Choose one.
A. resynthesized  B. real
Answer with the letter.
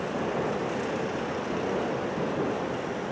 B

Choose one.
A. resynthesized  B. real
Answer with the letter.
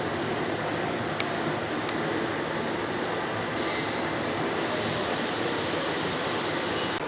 B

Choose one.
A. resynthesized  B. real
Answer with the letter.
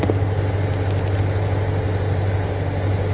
B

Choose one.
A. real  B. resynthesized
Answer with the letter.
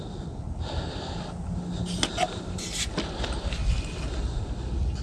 A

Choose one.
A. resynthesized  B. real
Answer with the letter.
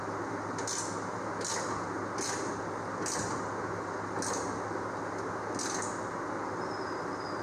B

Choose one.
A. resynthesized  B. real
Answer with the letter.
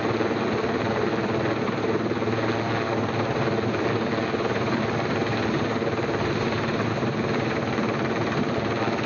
B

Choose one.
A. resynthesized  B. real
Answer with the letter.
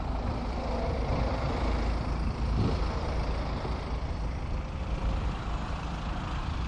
A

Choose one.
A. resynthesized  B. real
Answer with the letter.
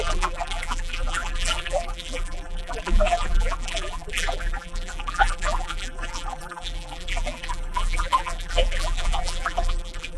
A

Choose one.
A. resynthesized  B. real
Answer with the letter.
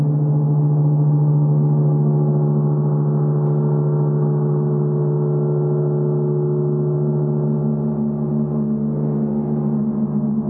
B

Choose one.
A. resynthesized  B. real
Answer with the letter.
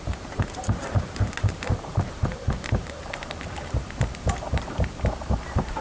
A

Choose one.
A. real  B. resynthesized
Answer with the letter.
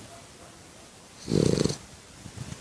A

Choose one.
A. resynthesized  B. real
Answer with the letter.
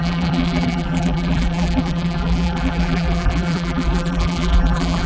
A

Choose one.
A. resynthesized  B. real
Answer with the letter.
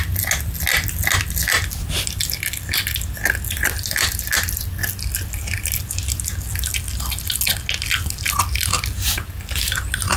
B